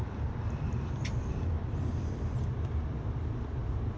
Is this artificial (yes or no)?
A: no